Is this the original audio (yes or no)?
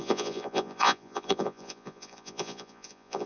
no